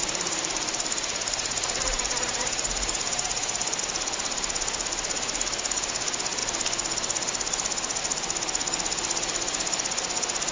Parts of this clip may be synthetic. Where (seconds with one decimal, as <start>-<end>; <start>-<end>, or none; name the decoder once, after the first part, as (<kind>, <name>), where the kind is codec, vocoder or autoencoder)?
0.0-3.8 (vocoder, BigVGAN v2)